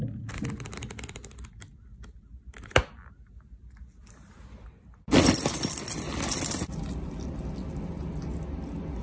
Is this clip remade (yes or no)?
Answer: no